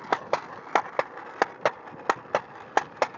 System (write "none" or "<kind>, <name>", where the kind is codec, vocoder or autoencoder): none